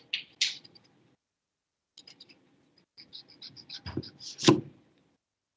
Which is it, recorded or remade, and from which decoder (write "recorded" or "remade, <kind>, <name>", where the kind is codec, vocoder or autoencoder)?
recorded